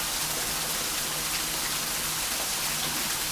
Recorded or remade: recorded